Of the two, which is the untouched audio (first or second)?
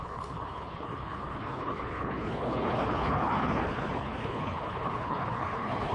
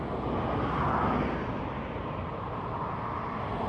second